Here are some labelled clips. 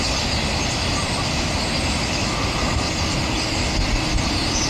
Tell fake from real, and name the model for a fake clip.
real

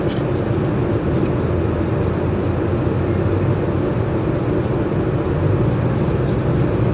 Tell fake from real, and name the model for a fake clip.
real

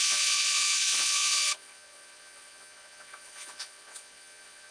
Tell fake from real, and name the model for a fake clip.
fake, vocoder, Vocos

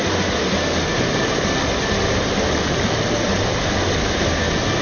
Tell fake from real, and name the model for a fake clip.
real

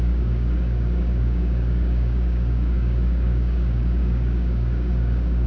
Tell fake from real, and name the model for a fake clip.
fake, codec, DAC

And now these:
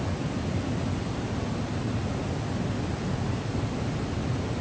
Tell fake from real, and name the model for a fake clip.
real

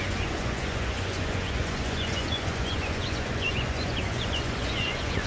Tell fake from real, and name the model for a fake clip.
fake, vocoder, Vocos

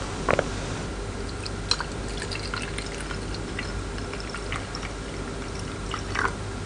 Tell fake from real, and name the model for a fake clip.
real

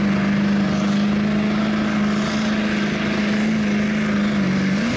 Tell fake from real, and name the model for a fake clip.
real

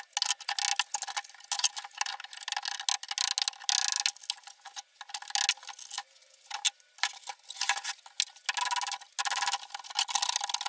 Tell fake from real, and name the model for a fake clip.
real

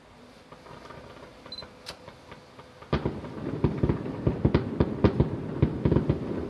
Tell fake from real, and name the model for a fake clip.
real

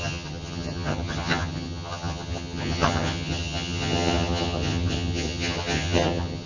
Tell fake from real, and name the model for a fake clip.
fake, vocoder, HiFi-GAN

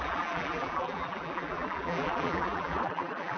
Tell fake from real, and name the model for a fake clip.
fake, vocoder, BigVGAN v2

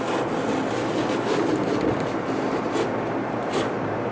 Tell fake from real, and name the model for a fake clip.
real